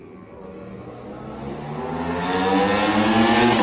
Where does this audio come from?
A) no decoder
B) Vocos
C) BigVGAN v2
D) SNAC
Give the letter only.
A